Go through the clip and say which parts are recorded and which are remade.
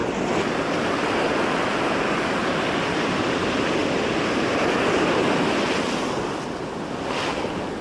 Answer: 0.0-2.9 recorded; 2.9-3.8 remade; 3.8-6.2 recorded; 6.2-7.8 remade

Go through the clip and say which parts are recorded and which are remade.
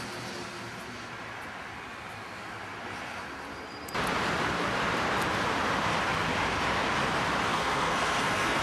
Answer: 0.0-7.5 recorded; 7.5-8.6 remade